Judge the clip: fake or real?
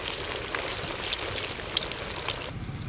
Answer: real